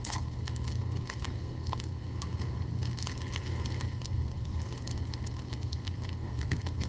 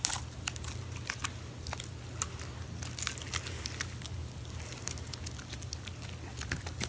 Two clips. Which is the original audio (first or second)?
second